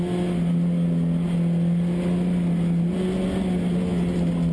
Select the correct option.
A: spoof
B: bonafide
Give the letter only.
B